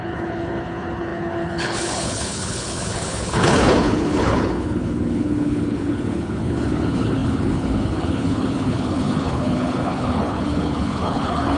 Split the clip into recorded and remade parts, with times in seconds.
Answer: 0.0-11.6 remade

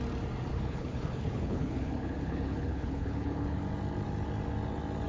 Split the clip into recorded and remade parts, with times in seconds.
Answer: 0.0-0.5 recorded; 0.5-3.6 remade; 3.6-5.1 recorded

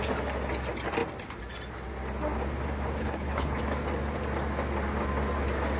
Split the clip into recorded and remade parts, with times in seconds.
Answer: 0.0-3.0 recorded; 3.0-3.6 remade; 3.6-5.8 recorded